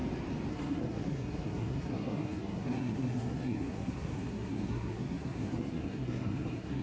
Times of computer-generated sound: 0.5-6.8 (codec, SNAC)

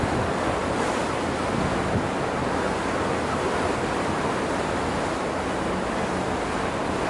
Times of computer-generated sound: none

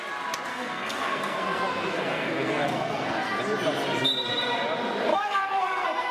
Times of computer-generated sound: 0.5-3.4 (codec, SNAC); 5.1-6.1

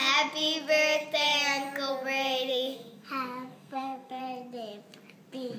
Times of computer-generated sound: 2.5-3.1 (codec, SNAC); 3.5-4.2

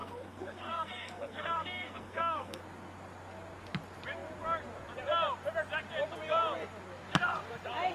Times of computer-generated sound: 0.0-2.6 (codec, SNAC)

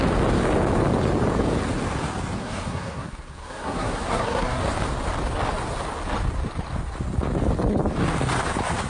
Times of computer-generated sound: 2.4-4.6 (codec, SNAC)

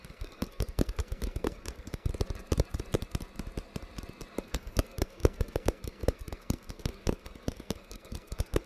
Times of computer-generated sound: 0.0-2.1 (codec, SNAC); 4.4-8.7

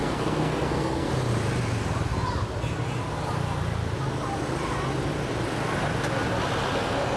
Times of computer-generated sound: 0.0-1.1 (codec, SNAC)